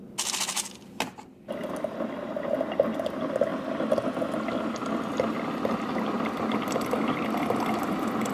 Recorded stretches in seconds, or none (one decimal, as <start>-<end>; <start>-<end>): 0.0-8.3